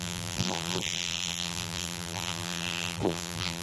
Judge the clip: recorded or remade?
remade